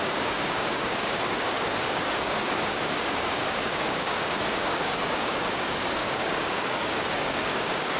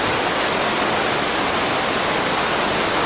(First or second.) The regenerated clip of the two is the first